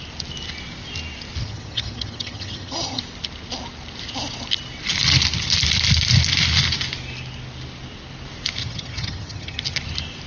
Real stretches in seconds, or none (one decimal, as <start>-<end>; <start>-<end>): 0.0-1.4; 3.0-8.6; 9.6-10.3